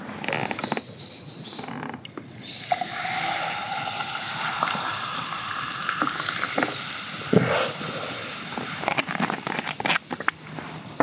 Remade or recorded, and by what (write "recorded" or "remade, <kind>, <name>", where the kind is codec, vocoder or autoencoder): recorded